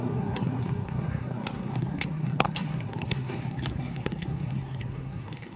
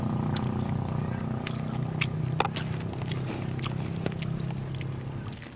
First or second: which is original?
second